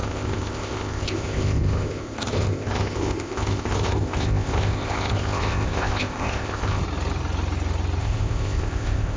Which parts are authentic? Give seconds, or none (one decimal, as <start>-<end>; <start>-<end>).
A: 6.8-8.0